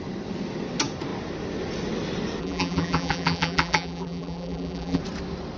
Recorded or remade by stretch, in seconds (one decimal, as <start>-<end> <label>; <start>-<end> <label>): 0.0-2.4 recorded; 2.4-5.0 remade; 5.0-5.6 recorded